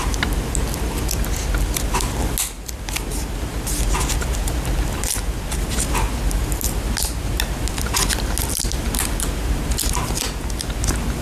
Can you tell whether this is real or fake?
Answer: real